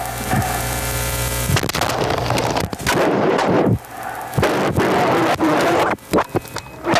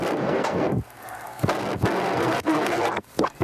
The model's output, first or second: second